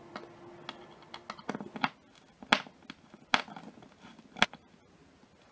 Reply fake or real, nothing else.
real